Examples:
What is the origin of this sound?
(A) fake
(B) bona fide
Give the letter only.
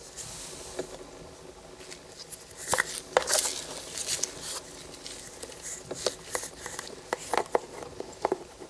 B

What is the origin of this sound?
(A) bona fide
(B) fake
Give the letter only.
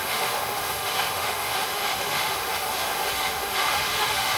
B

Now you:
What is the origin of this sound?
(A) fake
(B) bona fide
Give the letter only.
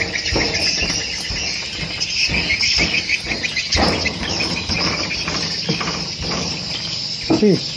B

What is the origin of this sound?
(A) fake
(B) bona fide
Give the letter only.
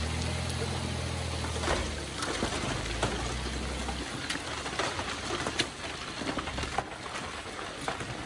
B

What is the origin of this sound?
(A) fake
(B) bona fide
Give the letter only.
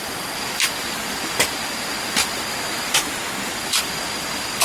B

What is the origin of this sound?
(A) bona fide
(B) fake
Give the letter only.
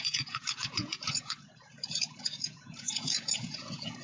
B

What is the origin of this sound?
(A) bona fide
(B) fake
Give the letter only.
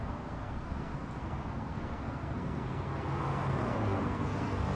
B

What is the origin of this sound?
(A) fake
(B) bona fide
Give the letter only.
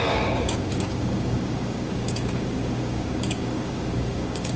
A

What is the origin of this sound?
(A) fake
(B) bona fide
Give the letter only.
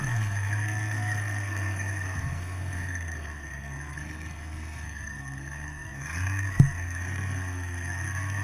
A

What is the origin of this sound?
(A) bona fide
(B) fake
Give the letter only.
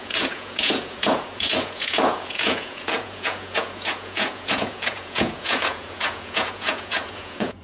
B